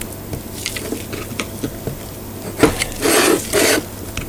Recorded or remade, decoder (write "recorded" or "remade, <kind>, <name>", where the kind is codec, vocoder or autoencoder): recorded